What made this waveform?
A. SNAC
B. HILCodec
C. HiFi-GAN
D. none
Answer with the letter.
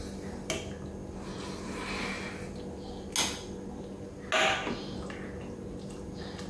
D